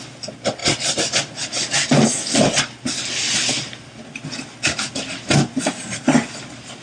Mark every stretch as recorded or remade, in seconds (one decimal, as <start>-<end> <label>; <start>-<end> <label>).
0.0-6.8 recorded